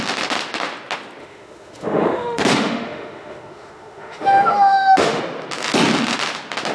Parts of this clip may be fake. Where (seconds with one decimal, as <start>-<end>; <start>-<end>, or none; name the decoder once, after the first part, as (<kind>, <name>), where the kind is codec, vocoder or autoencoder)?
1.2-5.2 (autoencoder, DAC-VAE)